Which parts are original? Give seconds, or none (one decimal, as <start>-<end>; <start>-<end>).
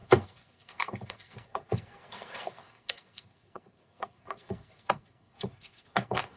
none